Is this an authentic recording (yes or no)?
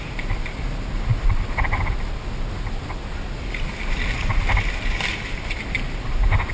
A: yes